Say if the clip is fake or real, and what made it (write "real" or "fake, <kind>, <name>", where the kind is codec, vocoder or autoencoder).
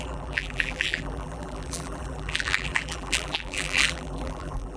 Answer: fake, vocoder, BigVGAN v2